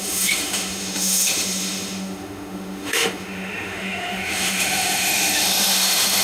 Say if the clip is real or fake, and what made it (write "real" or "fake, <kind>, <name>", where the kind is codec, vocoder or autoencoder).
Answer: fake, autoencoder, DAC-VAE